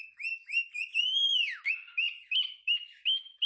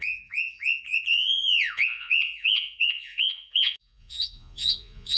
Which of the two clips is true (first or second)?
first